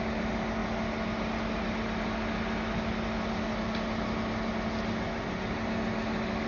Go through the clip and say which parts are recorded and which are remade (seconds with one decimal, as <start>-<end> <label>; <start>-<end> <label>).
0.0-6.5 recorded